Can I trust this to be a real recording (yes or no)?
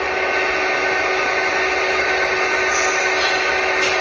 yes